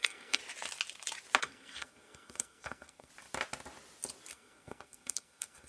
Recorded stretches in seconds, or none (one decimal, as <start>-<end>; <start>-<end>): 0.4-1.4; 3.1-4.3